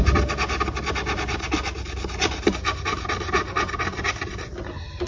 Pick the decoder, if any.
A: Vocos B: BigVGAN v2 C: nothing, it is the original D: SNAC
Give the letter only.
C